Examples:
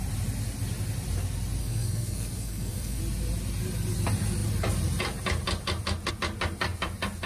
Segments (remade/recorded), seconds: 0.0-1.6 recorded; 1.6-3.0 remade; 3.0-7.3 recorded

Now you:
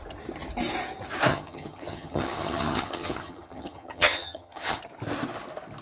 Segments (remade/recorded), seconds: 0.0-1.3 recorded; 1.3-4.8 remade; 4.8-5.8 recorded

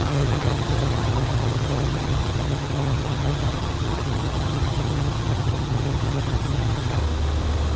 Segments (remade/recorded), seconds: 0.0-7.0 remade; 7.0-7.8 recorded

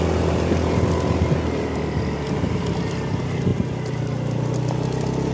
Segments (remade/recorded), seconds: 0.0-5.3 recorded

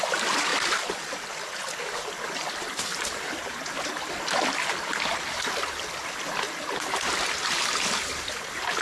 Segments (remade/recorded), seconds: 0.0-8.8 recorded

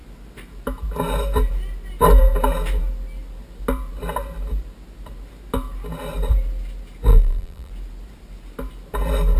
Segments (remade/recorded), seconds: 0.0-7.1 recorded; 7.1-7.7 remade; 7.7-9.4 recorded